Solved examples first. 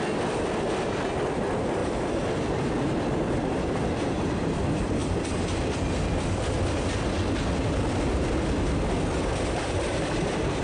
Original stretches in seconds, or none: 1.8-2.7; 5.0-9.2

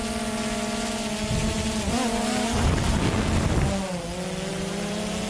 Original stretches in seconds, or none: 0.0-1.4; 2.6-4.5

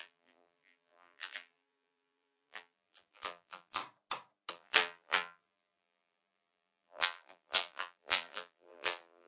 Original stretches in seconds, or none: 3.8-4.5

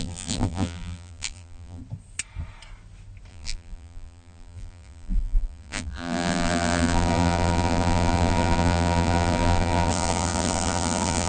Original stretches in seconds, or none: 1.8-3.3

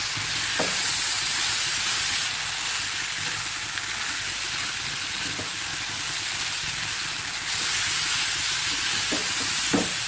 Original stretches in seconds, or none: 1.4-4.9; 5.7-6.4

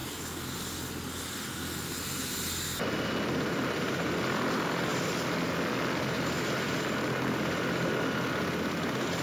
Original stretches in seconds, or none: 0.0-4.9; 5.5-9.2

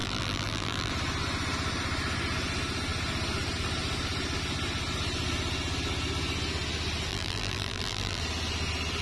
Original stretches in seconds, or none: 0.9-7.1; 8.2-9.0

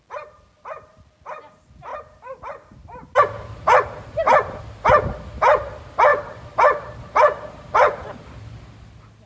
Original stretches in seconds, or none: 0.0-1.9; 4.6-6.1; 7.3-9.3